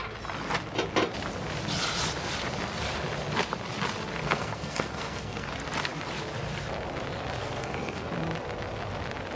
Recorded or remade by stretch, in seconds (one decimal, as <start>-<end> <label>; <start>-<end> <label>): 0.0-4.2 recorded; 4.2-5.5 remade; 5.5-7.4 recorded; 7.4-8.1 remade; 8.1-9.4 recorded